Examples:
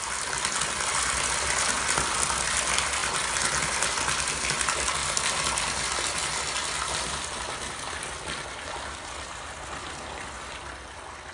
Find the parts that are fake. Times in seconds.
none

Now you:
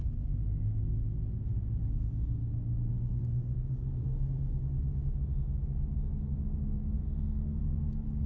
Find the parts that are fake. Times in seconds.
4.0-4.6 (codec, SNAC); 7.0-7.6

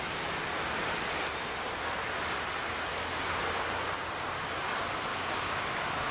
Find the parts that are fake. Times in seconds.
5.1-6.1 (codec, DAC)

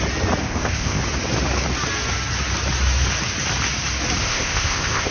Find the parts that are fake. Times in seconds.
0.4-1.0 (codec, ZipCodec); 4.2-5.1

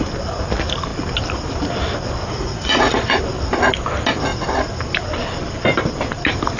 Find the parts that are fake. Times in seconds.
2.2-3.2 (vocoder, Vocos)

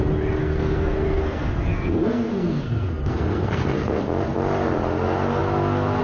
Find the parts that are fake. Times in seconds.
0.4-4.0 (codec, SNAC)

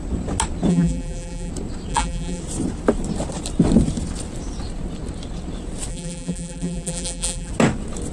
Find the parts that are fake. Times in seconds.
0.7-1.5 (vocoder, BigVGAN v2); 1.9-2.4; 5.9-7.5